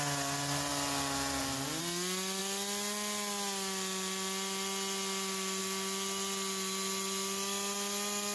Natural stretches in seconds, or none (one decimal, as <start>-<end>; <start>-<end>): 0.0-8.3